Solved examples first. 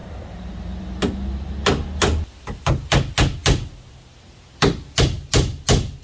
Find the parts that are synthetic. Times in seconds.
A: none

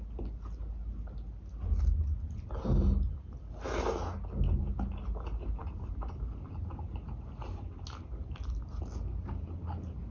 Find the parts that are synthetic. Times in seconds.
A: none

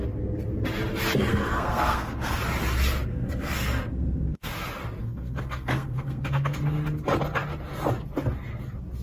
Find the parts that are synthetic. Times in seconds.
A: 1.3-2.4; 3.1-4.5; 5.0-6.6